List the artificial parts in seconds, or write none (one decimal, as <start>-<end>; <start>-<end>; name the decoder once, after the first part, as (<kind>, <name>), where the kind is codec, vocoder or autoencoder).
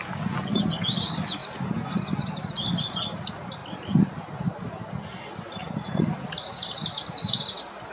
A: none